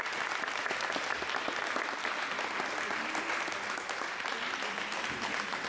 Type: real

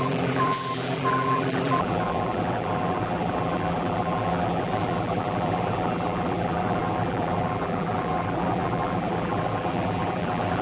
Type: fake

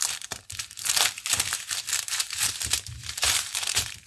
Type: fake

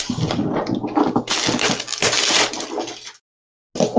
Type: real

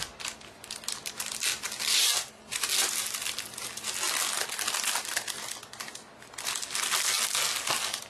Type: real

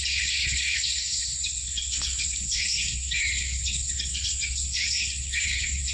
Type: fake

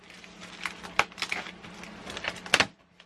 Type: real